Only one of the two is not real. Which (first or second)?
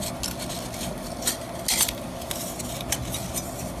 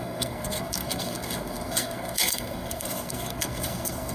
second